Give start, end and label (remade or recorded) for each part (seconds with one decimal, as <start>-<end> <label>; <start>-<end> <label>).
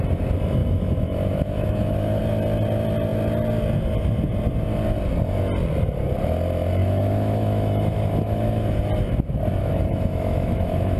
0.0-0.6 recorded; 0.6-2.2 remade; 2.2-6.8 recorded; 6.8-8.8 remade; 8.8-9.6 recorded; 9.6-11.0 remade